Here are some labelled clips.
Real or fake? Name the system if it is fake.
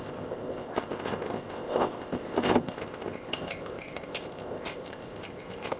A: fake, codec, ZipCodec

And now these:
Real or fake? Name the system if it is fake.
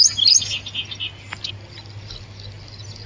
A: real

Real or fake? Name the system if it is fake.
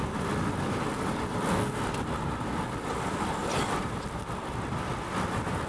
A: real